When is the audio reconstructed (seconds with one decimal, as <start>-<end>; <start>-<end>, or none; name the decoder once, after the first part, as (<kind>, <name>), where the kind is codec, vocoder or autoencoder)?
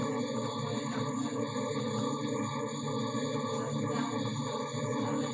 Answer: none